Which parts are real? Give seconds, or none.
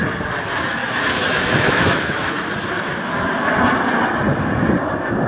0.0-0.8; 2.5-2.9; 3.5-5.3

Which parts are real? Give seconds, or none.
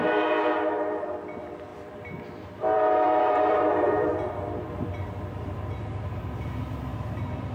0.0-1.7; 6.2-7.5